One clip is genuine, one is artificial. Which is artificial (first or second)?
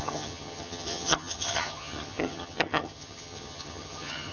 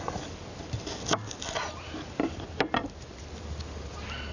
first